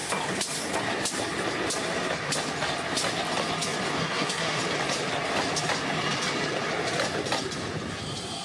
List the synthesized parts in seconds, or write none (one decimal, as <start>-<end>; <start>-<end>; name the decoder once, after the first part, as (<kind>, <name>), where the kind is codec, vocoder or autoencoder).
4.0-4.6 (codec, SNAC)